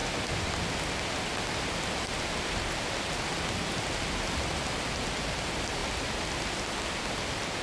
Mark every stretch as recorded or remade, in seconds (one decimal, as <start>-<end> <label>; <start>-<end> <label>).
0.0-7.6 recorded